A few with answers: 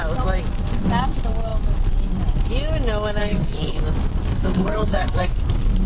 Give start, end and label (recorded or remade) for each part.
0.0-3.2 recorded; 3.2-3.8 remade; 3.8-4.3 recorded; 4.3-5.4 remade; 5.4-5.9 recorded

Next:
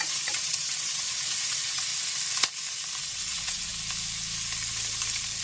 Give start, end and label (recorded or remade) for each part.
0.0-1.9 remade; 1.9-3.0 recorded; 3.0-3.7 remade; 3.7-5.4 recorded

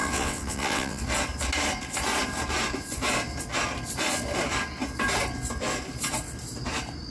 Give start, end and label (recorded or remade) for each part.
0.0-1.0 remade; 1.0-7.1 recorded

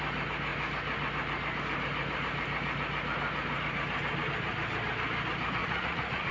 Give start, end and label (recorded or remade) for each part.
0.0-5.6 recorded; 5.6-6.3 remade

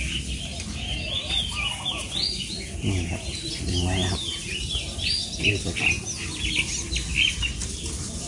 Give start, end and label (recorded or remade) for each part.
0.0-8.3 recorded